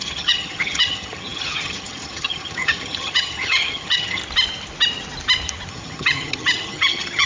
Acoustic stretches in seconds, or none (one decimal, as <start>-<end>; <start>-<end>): 4.2-5.7